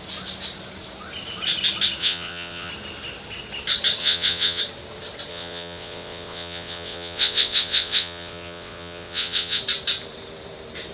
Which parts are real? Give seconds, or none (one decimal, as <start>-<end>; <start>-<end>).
0.0-2.0; 2.7-4.0; 4.6-5.3; 9.6-10.9